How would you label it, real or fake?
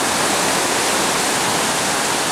real